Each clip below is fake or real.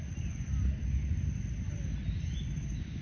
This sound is real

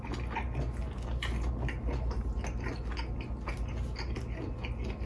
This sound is real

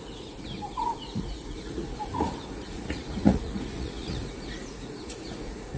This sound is fake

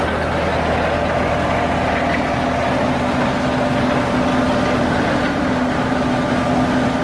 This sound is real